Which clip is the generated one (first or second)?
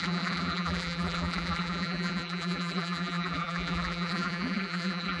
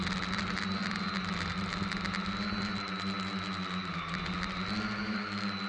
first